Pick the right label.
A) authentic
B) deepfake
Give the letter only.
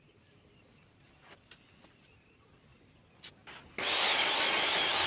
A